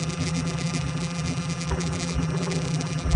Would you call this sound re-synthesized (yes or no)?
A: yes